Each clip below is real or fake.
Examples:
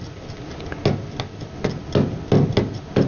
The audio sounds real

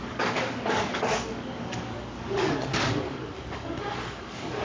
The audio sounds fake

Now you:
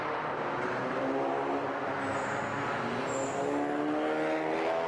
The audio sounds real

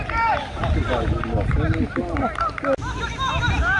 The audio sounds real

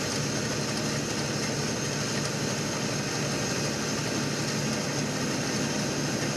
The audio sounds real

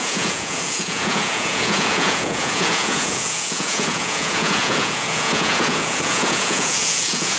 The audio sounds fake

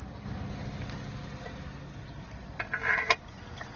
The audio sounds real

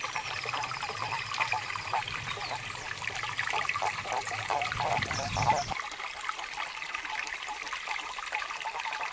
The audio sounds fake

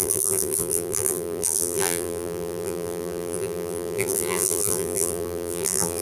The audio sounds fake